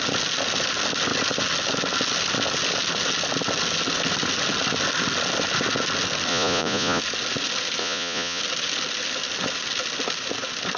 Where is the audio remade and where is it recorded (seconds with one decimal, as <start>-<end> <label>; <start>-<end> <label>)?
0.0-6.3 recorded; 6.3-7.0 remade; 7.0-7.8 recorded; 7.8-8.4 remade; 8.4-10.8 recorded